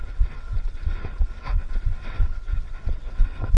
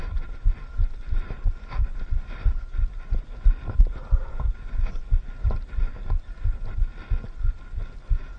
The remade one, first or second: first